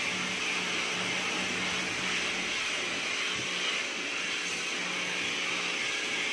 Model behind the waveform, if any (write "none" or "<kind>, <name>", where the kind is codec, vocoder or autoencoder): none